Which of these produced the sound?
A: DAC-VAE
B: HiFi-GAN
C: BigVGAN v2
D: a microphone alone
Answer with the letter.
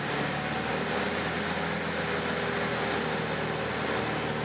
D